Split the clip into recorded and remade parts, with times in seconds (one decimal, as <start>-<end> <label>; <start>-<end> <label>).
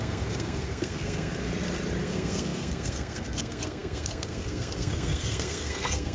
0.0-1.5 remade; 1.5-2.0 recorded; 2.0-6.1 remade